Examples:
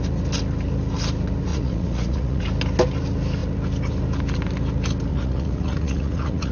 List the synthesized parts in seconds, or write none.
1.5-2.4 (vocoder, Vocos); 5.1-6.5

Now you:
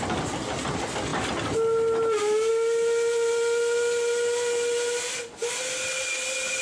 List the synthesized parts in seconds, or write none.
none

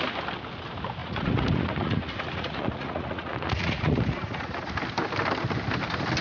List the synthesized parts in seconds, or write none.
1.0-4.7 (vocoder, Vocos)

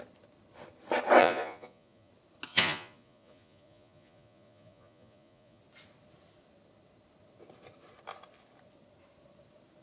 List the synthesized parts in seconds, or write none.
1.2-2.1 (vocoder, Vocos); 2.5-5.6